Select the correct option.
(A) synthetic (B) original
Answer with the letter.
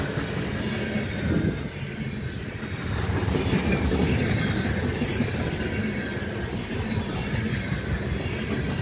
B